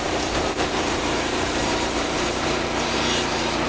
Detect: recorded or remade remade